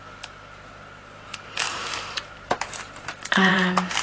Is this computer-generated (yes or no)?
yes